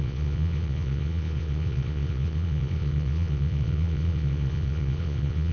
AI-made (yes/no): yes